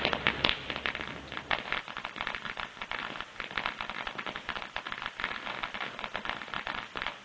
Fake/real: real